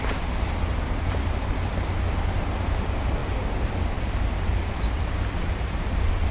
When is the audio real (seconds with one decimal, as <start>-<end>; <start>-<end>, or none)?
1.7-2.4